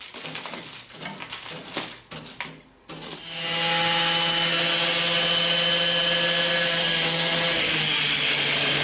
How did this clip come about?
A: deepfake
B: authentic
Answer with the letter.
B